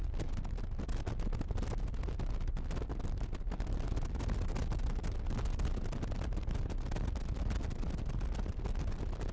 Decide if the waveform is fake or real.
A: real